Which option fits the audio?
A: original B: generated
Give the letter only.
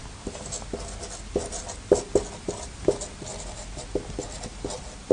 A